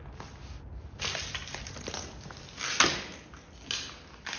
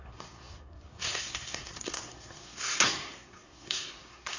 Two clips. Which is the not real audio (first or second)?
second